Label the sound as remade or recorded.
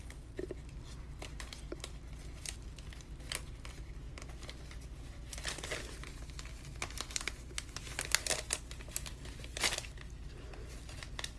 recorded